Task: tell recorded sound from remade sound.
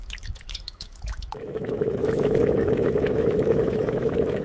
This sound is remade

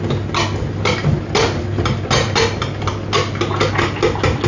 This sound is recorded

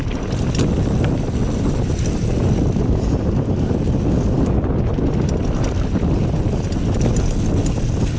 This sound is recorded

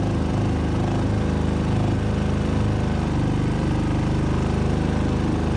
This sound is recorded